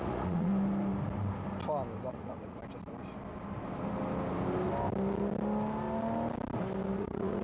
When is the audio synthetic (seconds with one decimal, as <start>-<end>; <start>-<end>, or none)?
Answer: 0.0-0.5; 2.1-2.6; 7.0-7.4